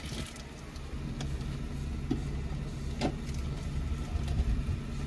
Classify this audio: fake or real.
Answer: real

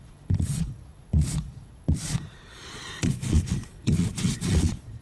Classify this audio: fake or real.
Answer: fake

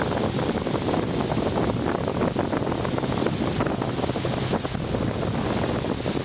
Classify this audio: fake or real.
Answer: real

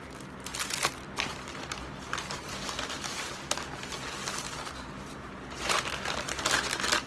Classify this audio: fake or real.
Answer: real